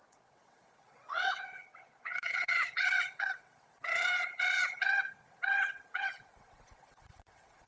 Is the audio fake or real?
fake